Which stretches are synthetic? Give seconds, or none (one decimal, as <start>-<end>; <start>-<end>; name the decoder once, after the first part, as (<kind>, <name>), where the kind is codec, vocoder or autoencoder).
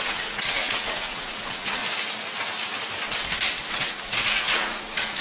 0.0-1.8 (vocoder, Vocos); 3.7-5.2